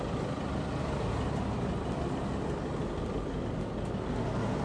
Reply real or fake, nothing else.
real